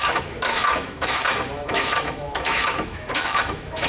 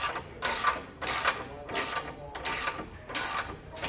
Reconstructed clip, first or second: first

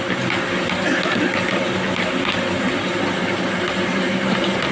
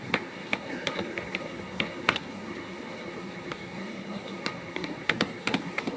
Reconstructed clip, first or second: second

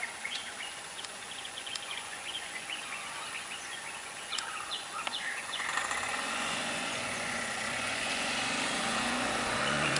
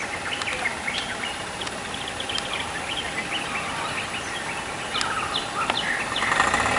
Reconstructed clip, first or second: first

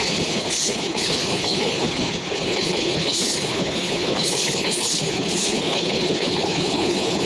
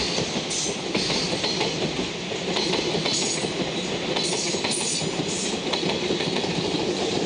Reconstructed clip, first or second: first